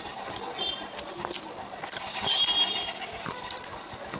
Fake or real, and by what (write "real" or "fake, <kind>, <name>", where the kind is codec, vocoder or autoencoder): real